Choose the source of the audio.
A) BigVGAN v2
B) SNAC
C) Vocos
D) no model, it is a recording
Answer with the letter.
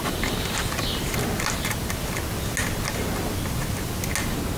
D